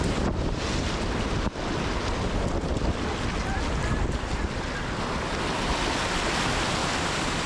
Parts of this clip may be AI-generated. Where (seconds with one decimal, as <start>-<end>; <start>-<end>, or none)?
6.8-7.5